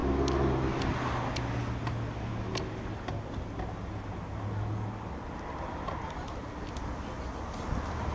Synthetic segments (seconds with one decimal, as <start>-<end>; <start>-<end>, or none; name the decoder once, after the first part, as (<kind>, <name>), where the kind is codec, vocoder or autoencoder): none

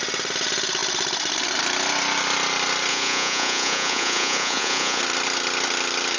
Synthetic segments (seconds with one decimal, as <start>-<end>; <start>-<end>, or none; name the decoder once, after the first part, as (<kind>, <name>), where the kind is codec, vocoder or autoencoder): 2.9-5.0 (vocoder, Vocos)